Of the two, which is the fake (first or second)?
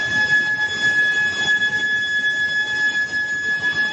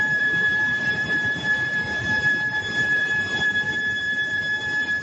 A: second